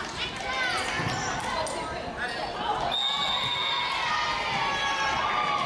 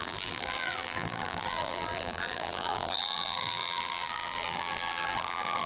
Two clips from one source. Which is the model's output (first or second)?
second